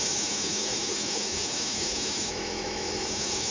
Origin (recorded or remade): remade